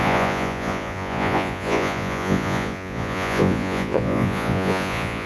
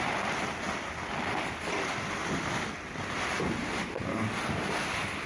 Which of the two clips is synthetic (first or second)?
first